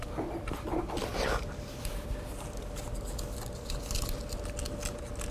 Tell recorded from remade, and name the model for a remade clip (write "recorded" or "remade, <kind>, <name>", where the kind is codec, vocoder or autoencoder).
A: recorded